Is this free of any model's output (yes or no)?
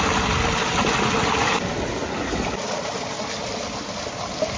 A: yes